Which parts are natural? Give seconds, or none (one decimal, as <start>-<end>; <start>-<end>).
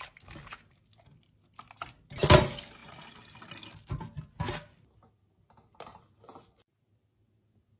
0.0-7.8